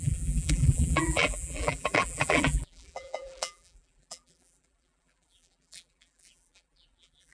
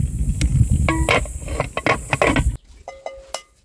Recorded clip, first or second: second